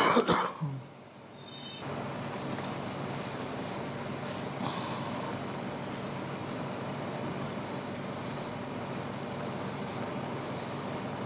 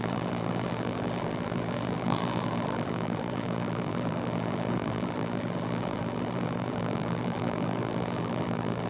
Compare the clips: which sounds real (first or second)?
first